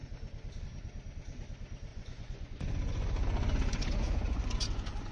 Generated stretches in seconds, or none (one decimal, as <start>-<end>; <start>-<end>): 1.9-5.1